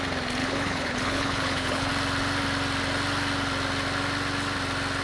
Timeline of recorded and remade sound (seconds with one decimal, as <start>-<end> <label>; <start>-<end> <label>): 0.0-0.4 recorded; 0.4-1.9 remade; 1.9-5.0 recorded